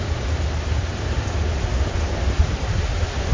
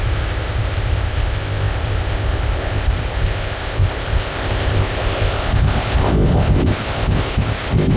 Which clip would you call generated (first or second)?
second